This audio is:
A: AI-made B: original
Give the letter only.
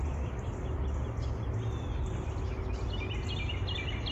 B